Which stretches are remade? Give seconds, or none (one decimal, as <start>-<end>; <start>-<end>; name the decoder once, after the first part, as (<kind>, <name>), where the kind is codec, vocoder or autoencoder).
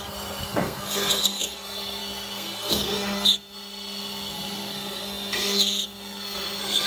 0.0-6.9 (codec, SNAC)